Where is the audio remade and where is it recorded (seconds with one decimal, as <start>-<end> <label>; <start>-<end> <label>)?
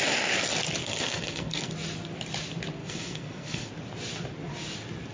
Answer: 0.0-0.8 recorded; 0.8-1.7 remade; 1.7-2.8 recorded; 2.8-3.7 remade; 3.7-5.1 recorded